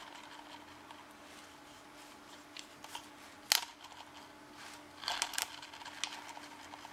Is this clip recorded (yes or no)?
yes